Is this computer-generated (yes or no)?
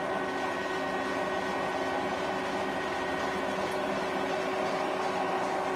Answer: no